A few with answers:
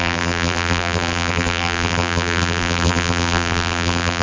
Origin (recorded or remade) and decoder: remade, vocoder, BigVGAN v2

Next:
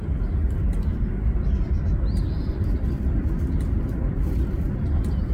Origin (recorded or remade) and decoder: recorded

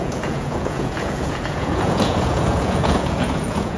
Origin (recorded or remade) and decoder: remade, vocoder, Vocos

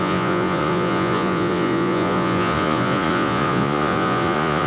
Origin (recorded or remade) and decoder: remade, vocoder, Vocos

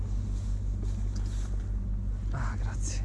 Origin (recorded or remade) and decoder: recorded